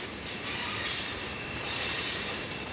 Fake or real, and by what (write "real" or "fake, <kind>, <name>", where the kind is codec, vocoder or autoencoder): fake, vocoder, BigVGAN v2